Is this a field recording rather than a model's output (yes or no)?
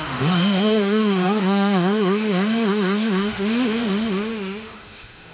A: no